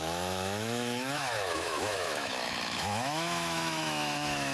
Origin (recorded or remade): remade